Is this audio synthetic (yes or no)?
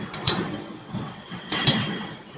yes